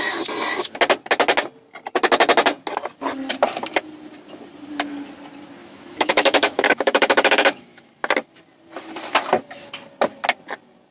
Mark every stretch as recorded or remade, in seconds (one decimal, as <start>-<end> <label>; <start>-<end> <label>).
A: 0.0-5.6 recorded; 5.6-7.8 remade; 7.8-10.9 recorded